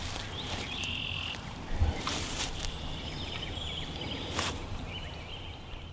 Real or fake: fake